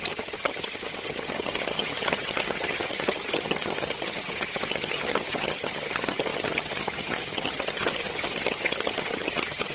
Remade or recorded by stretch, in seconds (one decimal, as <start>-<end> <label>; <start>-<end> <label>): 0.0-9.7 remade